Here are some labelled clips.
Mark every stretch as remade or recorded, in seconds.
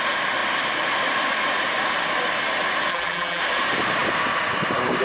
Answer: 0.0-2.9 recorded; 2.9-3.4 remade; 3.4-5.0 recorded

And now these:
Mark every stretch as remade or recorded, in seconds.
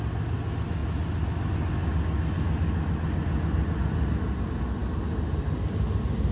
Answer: 0.0-6.3 recorded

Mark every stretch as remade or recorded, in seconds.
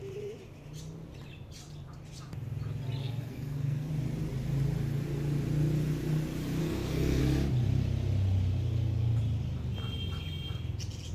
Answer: 0.0-3.0 recorded; 3.0-3.9 remade; 3.9-6.6 recorded; 6.6-7.2 remade; 7.2-11.1 recorded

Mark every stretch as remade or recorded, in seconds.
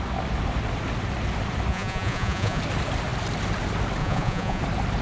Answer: 0.0-1.7 recorded; 1.7-2.6 remade; 2.6-4.0 recorded; 4.0-4.6 remade; 4.6-5.0 recorded